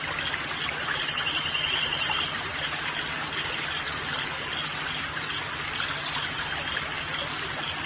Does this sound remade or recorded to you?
recorded